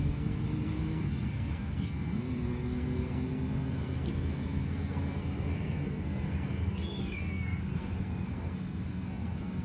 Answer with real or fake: fake